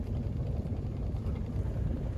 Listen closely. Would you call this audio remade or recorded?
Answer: remade